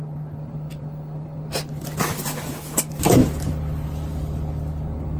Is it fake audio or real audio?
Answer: real